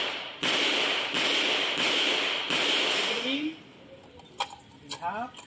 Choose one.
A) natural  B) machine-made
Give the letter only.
A